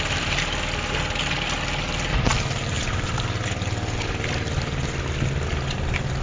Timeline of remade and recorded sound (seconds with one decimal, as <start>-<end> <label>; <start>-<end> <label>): 0.0-6.2 recorded